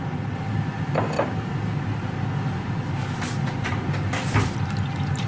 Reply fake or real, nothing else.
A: real